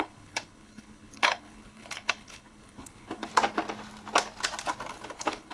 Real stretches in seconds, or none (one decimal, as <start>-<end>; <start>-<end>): 3.3-4.9